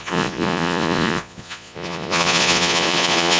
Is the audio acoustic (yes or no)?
no